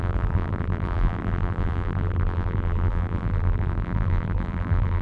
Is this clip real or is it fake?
fake